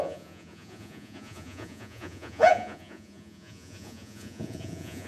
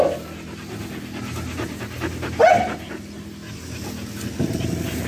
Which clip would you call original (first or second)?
second